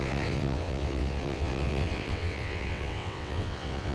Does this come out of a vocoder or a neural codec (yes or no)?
yes